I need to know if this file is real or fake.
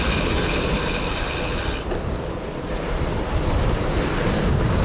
fake